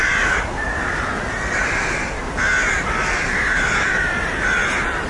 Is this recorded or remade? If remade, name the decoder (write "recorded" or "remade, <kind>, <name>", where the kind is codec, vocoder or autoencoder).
recorded